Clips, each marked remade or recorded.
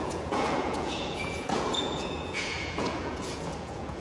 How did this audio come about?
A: remade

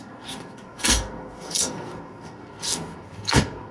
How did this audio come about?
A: remade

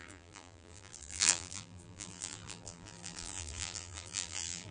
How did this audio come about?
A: remade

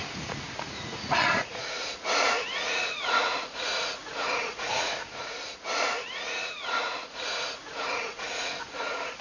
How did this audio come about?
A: remade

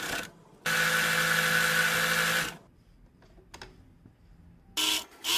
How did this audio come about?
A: recorded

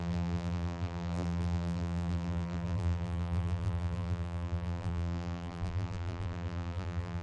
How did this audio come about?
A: remade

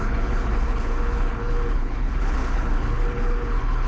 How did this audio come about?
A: remade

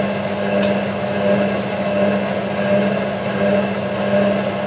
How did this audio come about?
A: recorded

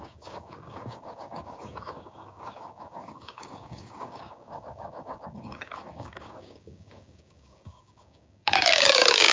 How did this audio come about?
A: remade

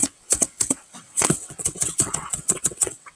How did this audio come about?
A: remade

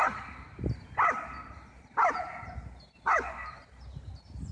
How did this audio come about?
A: recorded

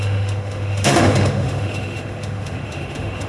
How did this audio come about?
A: remade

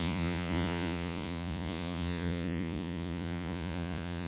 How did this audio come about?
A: remade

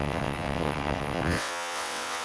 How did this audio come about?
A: remade